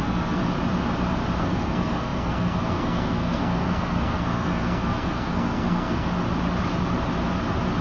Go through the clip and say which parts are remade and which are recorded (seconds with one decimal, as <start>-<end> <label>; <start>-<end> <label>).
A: 0.0-0.4 remade; 0.4-1.4 recorded; 1.4-6.1 remade; 6.1-7.8 recorded